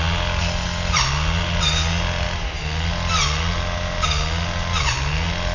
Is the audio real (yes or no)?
yes